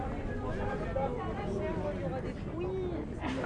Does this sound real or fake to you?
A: real